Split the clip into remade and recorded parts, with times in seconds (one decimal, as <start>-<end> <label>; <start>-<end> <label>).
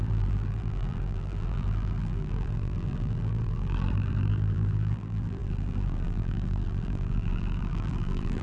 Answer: 0.0-8.4 remade